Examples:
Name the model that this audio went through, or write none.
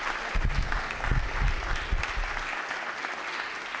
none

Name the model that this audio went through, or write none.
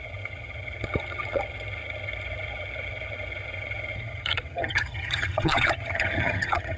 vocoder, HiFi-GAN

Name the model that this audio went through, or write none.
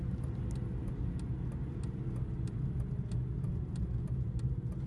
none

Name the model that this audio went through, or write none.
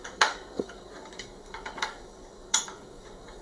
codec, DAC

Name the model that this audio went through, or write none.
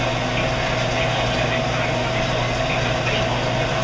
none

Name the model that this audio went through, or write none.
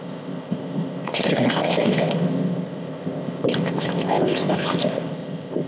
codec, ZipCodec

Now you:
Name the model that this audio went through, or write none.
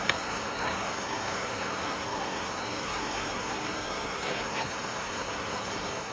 codec, SNAC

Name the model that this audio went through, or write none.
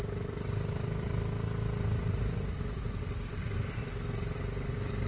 vocoder, BigVGAN v2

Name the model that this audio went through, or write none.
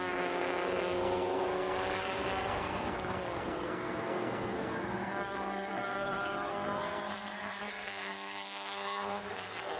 codec, SNAC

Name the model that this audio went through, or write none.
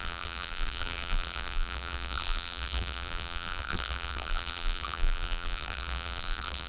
vocoder, BigVGAN v2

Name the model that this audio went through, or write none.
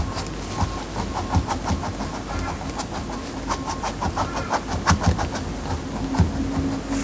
none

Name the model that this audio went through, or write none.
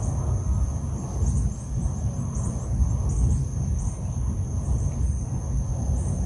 none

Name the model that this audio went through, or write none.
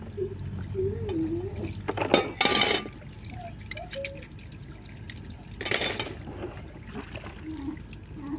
none